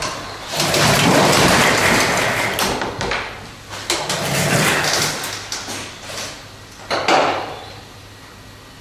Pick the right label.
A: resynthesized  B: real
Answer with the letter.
B